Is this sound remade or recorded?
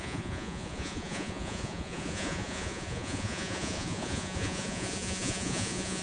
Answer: remade